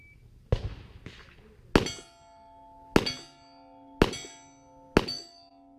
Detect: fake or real real